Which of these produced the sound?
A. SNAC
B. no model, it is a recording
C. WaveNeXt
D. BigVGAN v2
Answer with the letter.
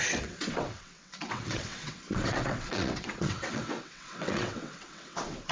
C